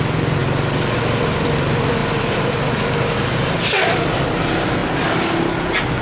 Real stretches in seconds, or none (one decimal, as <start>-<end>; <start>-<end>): 0.0-6.0